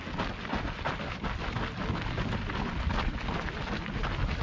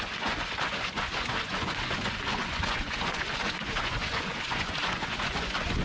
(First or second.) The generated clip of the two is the second